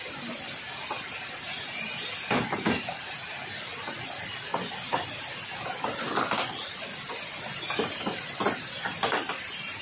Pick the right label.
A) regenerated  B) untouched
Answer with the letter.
B